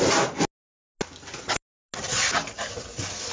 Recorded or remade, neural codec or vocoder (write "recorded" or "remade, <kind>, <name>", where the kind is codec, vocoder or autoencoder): recorded